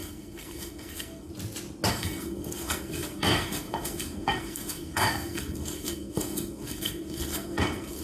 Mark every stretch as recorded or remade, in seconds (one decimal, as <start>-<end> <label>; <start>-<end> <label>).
0.0-1.3 remade; 1.3-1.9 recorded; 1.9-8.0 remade